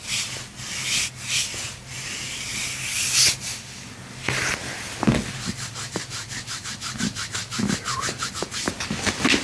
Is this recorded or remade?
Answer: recorded